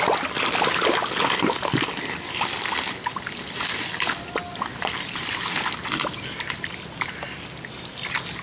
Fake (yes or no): no